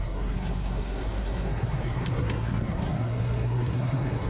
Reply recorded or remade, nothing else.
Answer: remade